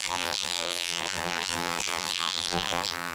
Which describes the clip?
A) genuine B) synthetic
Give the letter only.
B